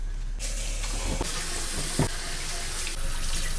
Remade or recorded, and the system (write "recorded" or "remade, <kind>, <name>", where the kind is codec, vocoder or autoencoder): recorded